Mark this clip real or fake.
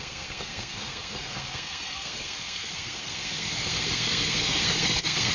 fake